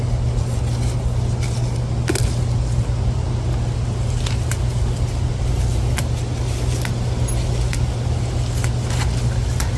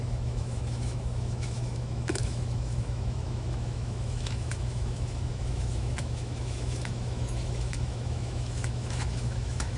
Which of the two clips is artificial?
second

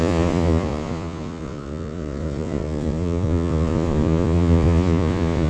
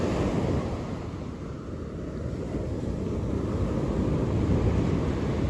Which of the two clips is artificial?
first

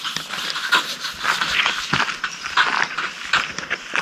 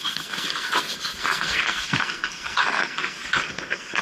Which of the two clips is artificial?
second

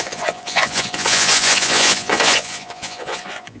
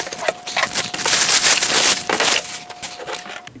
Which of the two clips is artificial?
first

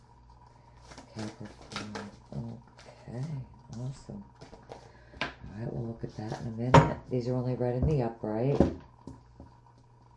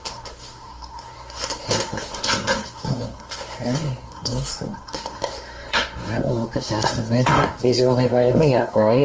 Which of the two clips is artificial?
second